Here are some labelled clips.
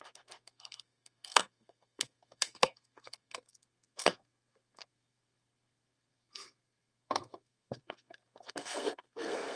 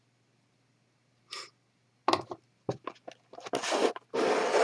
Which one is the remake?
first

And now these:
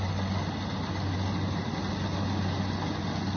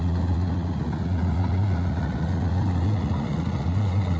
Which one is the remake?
second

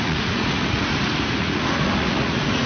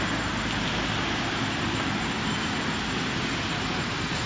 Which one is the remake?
first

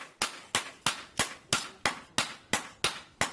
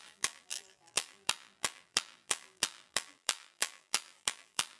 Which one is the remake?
second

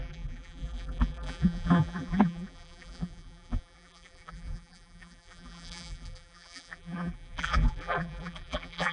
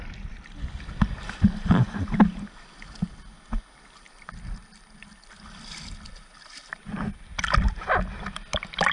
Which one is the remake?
first